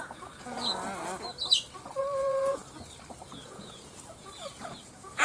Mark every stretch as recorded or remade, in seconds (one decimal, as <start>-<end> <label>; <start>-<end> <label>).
0.0-0.7 remade; 0.7-2.0 recorded; 2.0-2.6 remade; 2.6-3.2 recorded; 3.2-5.2 remade